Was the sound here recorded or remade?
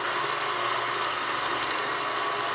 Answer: remade